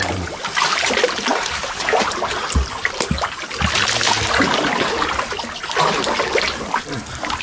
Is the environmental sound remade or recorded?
recorded